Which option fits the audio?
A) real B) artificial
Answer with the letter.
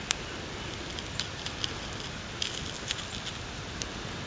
A